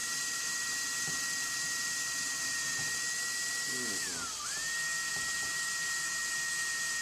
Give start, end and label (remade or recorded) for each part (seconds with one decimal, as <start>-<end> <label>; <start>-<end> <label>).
0.0-0.5 remade; 0.5-5.1 recorded; 5.1-6.3 remade; 6.3-7.0 recorded